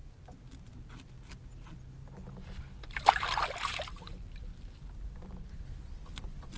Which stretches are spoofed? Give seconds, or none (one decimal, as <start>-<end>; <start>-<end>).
none